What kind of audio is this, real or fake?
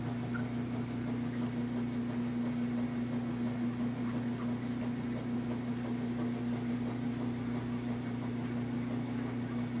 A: real